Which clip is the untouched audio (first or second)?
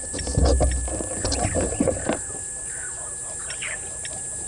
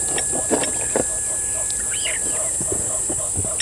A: second